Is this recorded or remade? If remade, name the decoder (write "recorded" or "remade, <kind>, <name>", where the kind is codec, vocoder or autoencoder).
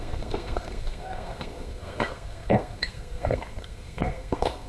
remade, codec, SNAC